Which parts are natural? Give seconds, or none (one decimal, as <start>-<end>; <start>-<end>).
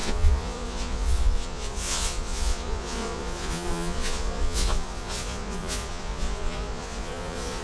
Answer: none